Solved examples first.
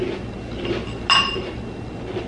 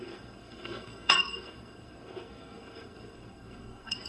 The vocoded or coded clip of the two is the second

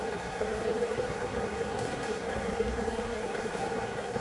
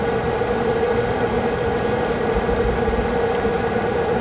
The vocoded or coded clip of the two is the first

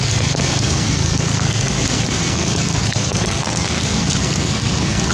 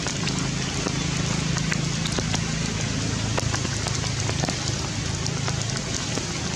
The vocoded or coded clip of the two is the first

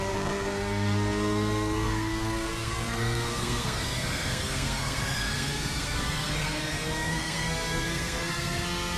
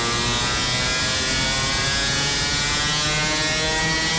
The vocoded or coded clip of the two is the first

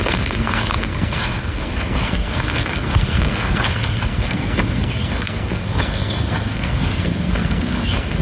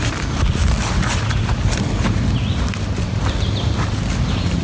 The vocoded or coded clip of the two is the first